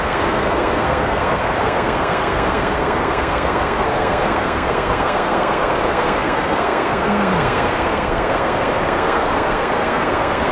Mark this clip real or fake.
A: fake